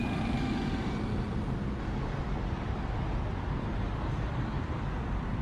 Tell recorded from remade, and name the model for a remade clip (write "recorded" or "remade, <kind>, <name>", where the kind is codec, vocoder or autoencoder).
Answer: recorded